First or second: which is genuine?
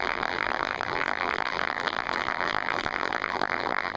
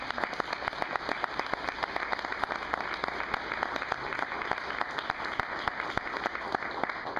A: second